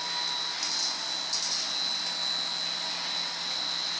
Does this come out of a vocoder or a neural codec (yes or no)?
no